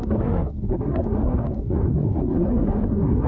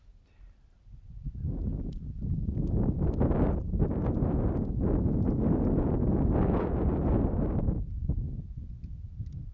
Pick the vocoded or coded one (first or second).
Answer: first